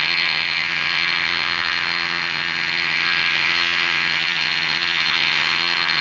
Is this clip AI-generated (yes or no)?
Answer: yes